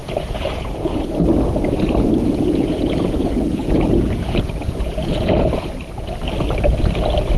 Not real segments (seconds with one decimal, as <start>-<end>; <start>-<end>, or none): 0.0-1.2; 2.2-5.6